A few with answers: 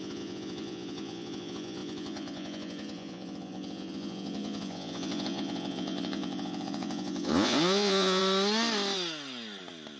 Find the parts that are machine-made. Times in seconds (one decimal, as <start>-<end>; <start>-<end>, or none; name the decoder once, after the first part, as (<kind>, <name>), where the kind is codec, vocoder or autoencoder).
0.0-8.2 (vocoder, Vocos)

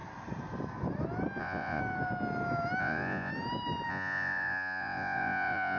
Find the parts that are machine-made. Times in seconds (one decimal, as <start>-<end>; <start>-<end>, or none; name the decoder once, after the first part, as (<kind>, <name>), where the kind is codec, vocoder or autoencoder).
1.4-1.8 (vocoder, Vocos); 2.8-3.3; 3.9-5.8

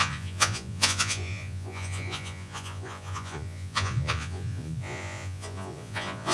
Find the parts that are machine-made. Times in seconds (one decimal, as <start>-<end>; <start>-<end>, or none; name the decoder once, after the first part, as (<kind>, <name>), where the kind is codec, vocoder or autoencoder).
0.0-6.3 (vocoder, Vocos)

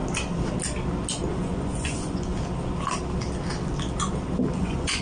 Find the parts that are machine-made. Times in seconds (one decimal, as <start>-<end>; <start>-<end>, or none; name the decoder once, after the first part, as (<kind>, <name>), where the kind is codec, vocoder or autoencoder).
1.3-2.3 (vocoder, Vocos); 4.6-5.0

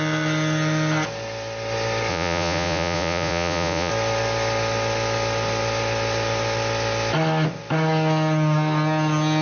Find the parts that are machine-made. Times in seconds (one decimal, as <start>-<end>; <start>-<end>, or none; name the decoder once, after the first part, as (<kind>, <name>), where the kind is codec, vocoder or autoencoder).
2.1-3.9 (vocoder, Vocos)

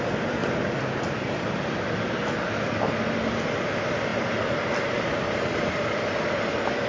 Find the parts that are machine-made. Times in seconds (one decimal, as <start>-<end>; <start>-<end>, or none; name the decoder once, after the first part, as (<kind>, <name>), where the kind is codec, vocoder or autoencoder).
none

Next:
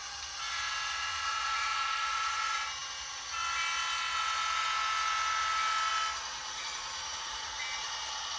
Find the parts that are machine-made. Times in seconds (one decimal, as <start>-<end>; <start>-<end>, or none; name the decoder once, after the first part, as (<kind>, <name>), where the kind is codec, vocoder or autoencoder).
1.1-2.4 (vocoder, Vocos); 6.4-7.9